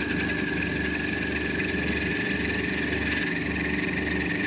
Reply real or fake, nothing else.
real